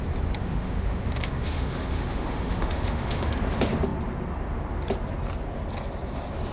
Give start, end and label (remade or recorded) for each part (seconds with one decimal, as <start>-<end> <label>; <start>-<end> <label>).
0.0-0.4 recorded; 0.4-3.3 remade; 3.3-6.5 recorded

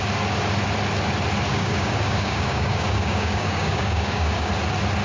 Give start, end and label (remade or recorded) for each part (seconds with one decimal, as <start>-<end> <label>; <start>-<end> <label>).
0.0-1.5 recorded; 1.5-4.5 remade; 4.5-5.0 recorded

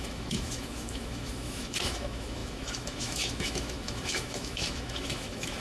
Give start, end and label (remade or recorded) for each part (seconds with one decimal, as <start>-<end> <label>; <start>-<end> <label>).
0.0-5.6 remade